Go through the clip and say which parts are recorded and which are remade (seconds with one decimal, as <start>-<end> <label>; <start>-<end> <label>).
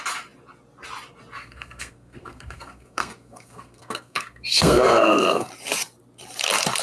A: 0.0-1.4 recorded; 1.4-5.5 remade; 5.5-6.8 recorded